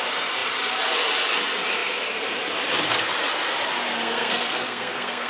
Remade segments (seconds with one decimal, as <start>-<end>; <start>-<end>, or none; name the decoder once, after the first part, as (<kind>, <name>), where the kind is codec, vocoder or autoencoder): 4.0-5.3 (codec, SNAC)